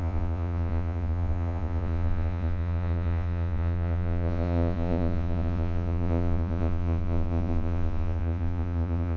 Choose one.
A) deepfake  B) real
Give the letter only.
A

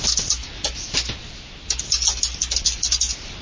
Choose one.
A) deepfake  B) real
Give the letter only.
B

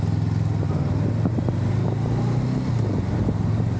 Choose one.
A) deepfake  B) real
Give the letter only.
B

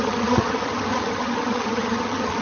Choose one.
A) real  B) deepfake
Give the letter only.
B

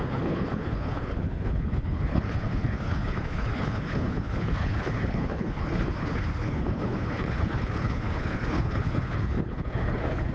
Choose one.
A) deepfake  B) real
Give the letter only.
A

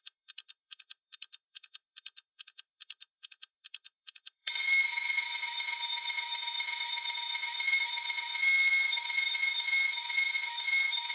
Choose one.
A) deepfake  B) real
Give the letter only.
A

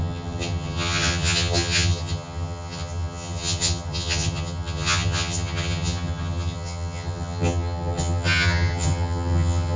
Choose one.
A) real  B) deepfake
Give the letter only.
B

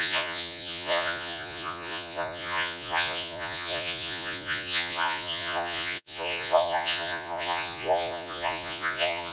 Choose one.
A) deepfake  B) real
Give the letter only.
A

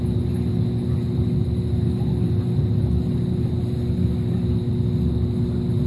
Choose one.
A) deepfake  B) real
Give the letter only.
B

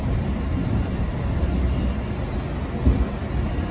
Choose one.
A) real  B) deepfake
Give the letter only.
A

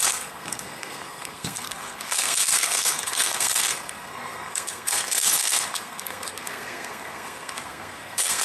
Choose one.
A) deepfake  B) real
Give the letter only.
A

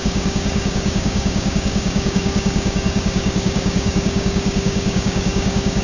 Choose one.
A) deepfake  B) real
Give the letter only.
A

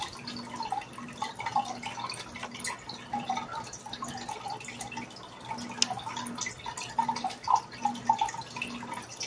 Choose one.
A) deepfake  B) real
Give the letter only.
B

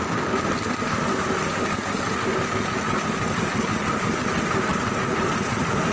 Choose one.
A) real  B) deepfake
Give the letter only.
A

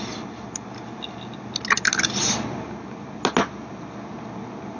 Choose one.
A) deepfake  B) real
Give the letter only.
B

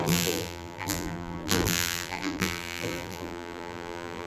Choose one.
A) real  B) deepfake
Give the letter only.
B